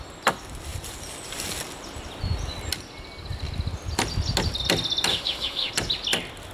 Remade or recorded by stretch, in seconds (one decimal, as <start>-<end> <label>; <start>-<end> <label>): 0.0-5.1 recorded; 5.1-5.7 remade; 5.7-6.5 recorded